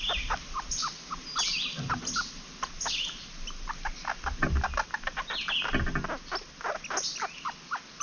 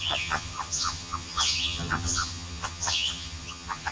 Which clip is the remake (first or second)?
second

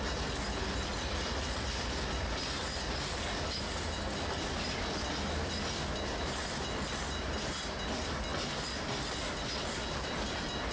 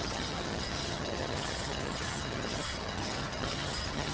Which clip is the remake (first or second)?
second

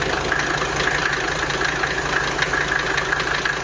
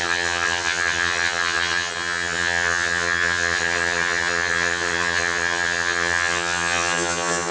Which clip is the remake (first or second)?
second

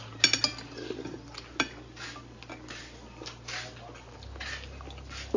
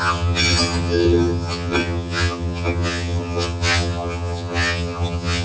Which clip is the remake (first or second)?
second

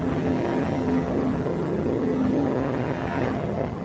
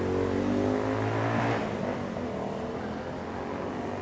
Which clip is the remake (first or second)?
first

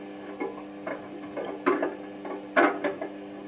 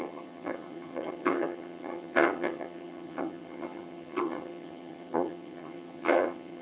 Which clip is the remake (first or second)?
second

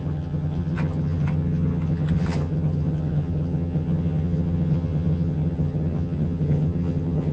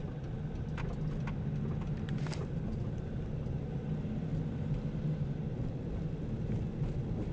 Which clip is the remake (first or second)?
first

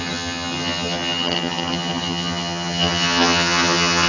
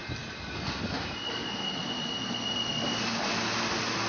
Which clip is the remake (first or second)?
first